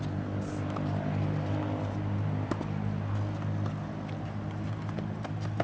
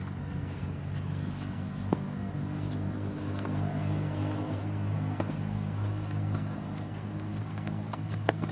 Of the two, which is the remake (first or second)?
second